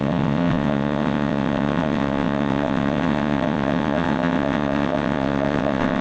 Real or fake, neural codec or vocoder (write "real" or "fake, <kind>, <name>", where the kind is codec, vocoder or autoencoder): fake, vocoder, WaveNeXt